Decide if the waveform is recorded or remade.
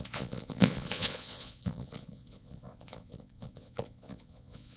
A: remade